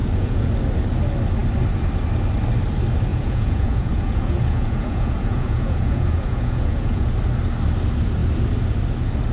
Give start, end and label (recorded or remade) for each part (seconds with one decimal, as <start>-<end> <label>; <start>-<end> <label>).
0.0-0.5 remade; 0.5-3.1 recorded; 3.1-7.1 remade; 7.1-9.3 recorded